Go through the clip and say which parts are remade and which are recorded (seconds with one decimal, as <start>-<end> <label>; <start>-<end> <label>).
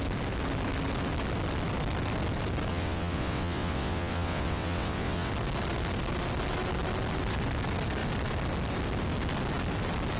0.0-2.7 recorded; 2.7-5.3 remade; 5.3-10.2 recorded